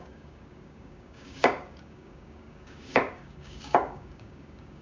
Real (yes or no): no